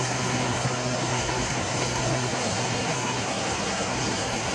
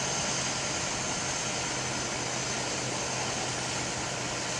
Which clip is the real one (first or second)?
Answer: second